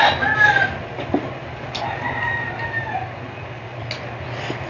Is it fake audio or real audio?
real